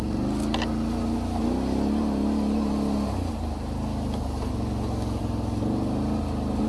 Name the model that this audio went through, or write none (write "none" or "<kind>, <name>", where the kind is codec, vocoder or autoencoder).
none